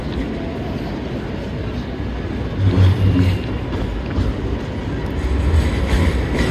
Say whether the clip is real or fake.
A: real